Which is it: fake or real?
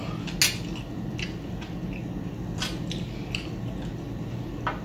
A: real